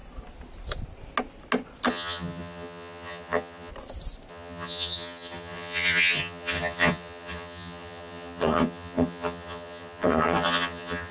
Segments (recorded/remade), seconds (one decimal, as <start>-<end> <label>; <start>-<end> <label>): 0.0-1.9 recorded; 1.9-3.7 remade; 3.7-4.3 recorded; 4.3-11.1 remade